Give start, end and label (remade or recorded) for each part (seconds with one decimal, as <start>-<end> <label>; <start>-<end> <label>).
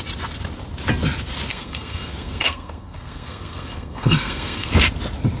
0.0-1.5 recorded; 1.5-4.7 remade; 4.7-5.4 recorded